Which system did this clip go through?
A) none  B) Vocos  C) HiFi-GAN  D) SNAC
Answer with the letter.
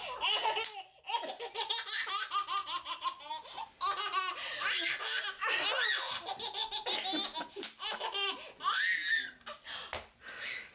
A